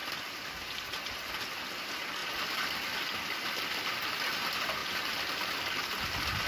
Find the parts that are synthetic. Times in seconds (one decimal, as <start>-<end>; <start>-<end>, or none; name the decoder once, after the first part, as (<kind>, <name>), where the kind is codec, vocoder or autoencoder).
0.0-1.3 (vocoder, BigVGAN v2); 2.2-2.7; 4.8-5.6